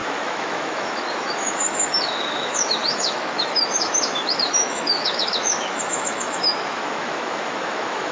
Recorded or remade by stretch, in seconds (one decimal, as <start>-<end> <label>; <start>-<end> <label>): 0.0-8.1 remade